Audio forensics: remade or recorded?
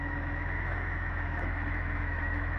remade